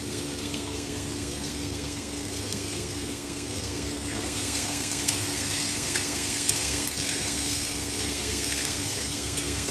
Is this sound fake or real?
fake